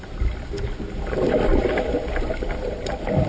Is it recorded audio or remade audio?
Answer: recorded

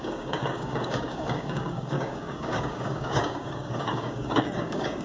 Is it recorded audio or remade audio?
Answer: remade